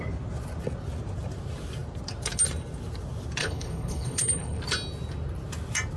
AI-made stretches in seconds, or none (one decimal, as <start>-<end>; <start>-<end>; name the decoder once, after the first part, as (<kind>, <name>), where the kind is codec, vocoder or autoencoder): 3.4-4.6 (codec, HILCodec)